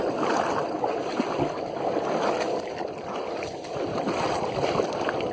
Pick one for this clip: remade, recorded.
recorded